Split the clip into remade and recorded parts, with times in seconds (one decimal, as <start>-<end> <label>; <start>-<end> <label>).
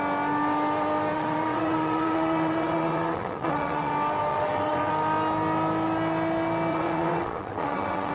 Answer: 0.0-1.1 recorded; 1.1-3.9 remade; 3.9-4.3 recorded; 4.3-4.9 remade; 4.9-6.7 recorded; 6.7-8.1 remade